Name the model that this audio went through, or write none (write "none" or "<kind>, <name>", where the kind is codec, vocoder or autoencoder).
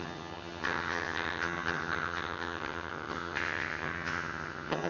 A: vocoder, HiFi-GAN